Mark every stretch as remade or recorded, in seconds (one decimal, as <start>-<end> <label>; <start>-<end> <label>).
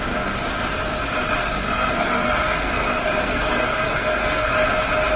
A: 0.0-1.4 recorded; 1.4-4.5 remade; 4.5-5.2 recorded